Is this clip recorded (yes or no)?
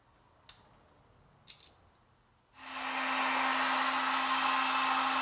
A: yes